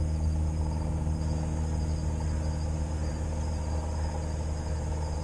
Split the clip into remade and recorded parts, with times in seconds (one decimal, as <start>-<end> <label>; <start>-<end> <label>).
0.0-5.2 recorded

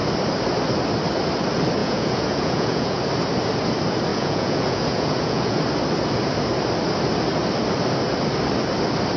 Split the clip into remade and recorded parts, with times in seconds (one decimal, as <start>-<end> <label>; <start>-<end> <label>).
0.0-1.8 recorded; 1.8-3.0 remade; 3.0-4.1 recorded; 4.1-5.6 remade; 5.6-9.2 recorded

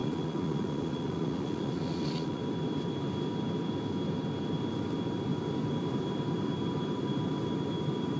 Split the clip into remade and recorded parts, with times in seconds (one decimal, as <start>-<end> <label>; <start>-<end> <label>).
0.0-2.4 remade; 2.4-8.2 recorded